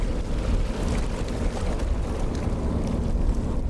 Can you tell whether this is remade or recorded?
recorded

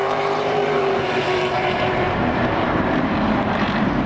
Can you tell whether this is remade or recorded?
remade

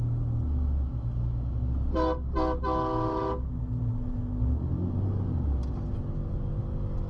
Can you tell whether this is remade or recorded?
recorded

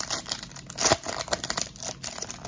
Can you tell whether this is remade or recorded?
recorded